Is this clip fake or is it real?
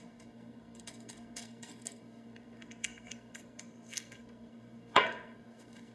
fake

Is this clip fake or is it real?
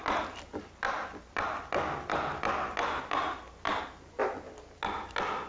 real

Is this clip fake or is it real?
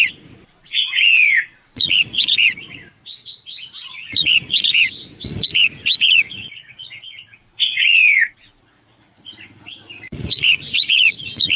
fake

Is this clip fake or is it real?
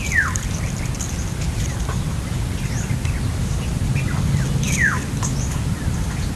real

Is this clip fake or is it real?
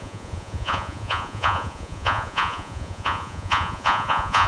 fake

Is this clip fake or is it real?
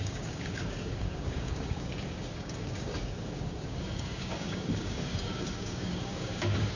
fake